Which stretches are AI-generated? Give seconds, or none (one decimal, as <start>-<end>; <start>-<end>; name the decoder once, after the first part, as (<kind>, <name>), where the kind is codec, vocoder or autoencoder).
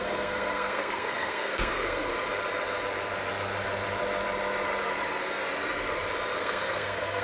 0.0-2.1 (codec, SNAC); 6.4-7.2